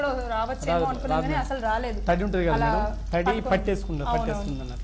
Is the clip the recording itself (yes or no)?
yes